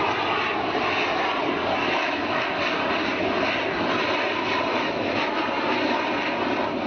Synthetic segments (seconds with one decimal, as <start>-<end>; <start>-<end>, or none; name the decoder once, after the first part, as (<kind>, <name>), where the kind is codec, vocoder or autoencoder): 2.0-2.6 (autoencoder, DAC-VAE); 4.7-5.4